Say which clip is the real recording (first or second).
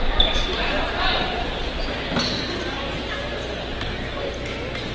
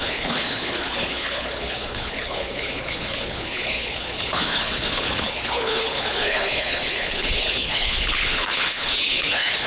first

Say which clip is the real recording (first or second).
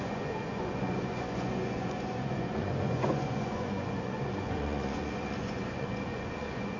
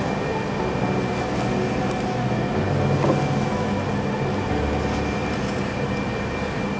second